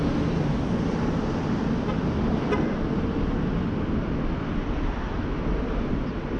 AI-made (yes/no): no